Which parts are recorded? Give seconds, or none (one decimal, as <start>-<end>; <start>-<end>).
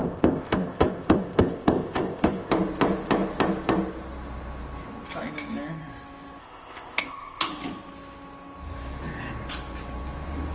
2.5-6.4; 7.5-10.5